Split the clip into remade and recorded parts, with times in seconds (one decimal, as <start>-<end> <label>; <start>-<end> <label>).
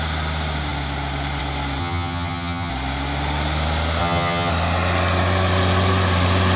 0.0-1.8 recorded; 1.8-2.7 remade; 2.7-4.0 recorded; 4.0-4.5 remade; 4.5-6.6 recorded